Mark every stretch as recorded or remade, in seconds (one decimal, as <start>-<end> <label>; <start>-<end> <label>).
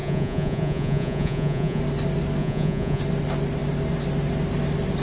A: 0.0-1.8 remade; 1.8-2.4 recorded; 2.4-3.0 remade; 3.0-5.0 recorded